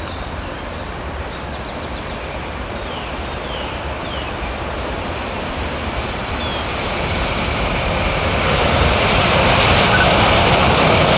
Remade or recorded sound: remade